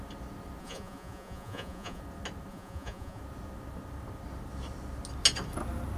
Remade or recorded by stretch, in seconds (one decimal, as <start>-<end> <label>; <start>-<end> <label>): 0.0-0.6 recorded; 0.6-2.0 remade; 2.0-2.5 recorded; 2.5-3.2 remade; 3.2-6.0 recorded